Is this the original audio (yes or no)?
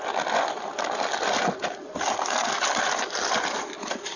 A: yes